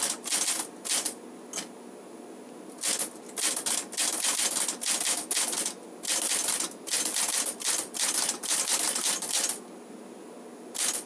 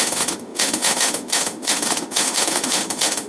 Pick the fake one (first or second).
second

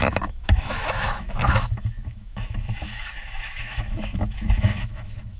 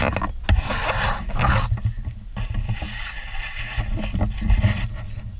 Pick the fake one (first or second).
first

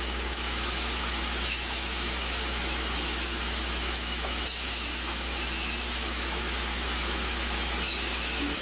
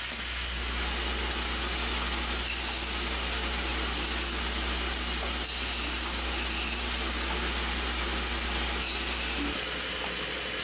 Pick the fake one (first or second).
first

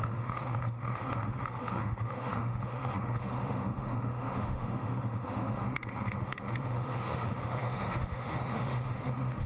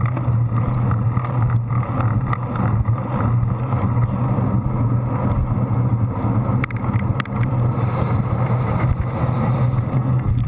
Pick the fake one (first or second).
first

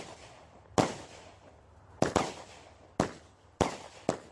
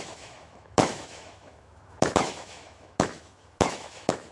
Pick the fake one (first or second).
second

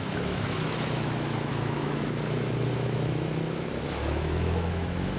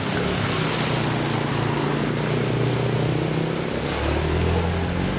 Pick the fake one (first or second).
first